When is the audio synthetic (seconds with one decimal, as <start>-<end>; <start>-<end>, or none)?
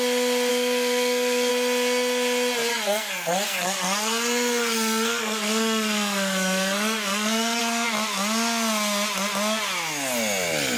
0.5-1.5; 2.7-7.6